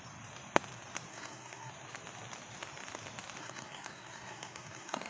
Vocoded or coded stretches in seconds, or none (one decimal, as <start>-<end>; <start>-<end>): 1.1-1.7; 3.4-5.1